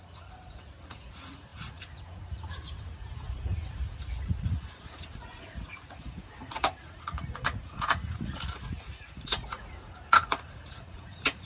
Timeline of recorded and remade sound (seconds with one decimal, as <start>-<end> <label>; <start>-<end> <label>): 0.0-11.5 remade